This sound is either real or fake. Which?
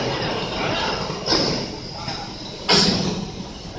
real